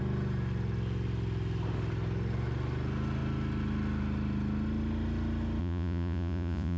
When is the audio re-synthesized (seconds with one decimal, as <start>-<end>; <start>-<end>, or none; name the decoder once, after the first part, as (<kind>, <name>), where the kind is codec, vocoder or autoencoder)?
5.6-6.8 (vocoder, Vocos)